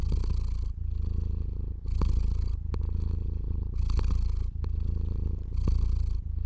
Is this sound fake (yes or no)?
no